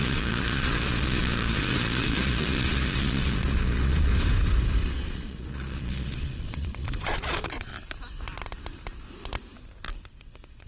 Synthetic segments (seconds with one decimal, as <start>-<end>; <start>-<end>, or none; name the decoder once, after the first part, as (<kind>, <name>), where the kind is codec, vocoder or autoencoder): 0.0-4.1 (vocoder, Vocos); 4.8-7.7; 10.2-10.7